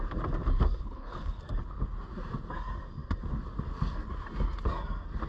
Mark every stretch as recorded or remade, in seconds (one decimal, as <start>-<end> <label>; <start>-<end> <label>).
0.0-0.8 recorded; 0.8-1.4 remade; 1.4-5.3 recorded